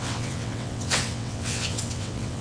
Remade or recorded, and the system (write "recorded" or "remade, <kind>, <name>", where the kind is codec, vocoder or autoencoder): remade, vocoder, WaveNeXt